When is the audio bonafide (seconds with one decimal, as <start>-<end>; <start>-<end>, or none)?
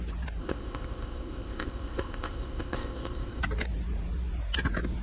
0.0-0.4; 3.4-5.0